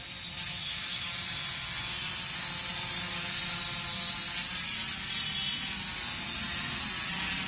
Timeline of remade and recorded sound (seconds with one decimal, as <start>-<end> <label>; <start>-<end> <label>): 0.0-0.5 recorded; 0.5-1.1 remade; 1.1-7.5 recorded